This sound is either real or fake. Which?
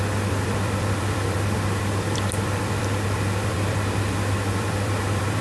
fake